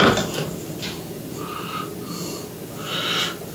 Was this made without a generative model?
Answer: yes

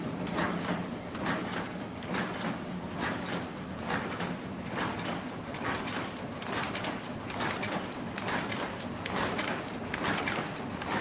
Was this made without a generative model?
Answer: no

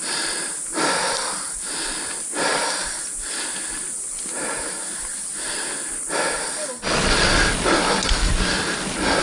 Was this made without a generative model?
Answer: yes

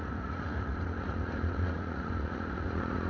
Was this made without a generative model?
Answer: no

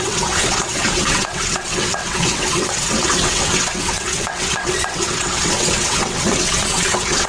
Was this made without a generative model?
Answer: no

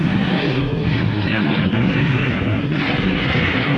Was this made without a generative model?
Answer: no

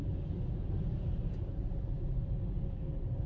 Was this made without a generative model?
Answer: yes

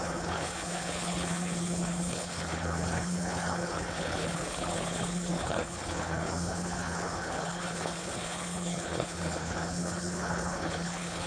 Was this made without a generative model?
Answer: no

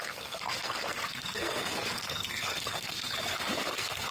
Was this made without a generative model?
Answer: no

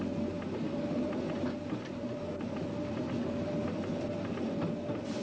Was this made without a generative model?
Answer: yes